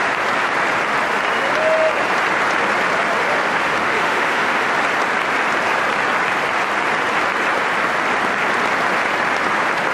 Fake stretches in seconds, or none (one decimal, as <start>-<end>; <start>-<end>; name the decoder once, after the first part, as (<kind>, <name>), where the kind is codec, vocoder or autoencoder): 3.2-4.7 (autoencoder, DAC-VAE)